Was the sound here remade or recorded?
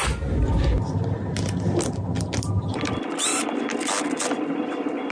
recorded